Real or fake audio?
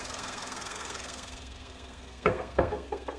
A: fake